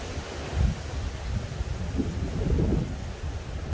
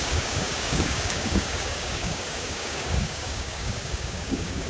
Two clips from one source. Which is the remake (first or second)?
second